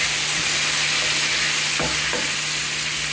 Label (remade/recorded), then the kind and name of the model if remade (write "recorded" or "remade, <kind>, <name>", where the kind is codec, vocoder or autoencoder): recorded